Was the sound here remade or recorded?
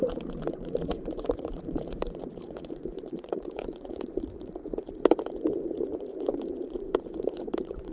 remade